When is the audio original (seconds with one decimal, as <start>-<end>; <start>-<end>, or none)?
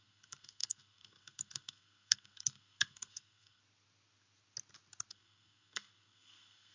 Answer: 3.6-5.1